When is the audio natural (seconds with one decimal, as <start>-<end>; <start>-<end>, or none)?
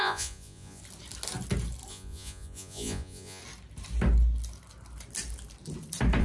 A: 0.8-1.9; 3.4-6.2